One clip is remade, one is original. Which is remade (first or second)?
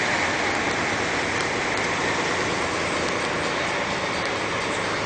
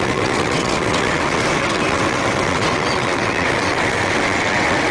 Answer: second